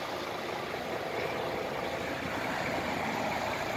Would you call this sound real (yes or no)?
yes